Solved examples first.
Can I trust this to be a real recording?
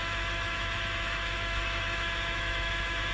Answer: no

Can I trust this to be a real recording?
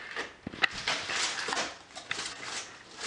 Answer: yes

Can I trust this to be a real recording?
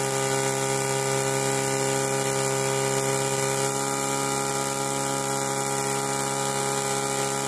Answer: yes